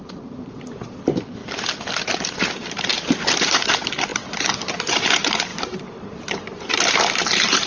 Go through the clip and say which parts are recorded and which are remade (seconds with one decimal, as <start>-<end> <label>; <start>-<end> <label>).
0.0-1.4 remade; 1.4-2.0 recorded; 2.0-4.1 remade; 4.1-4.8 recorded; 4.8-7.7 remade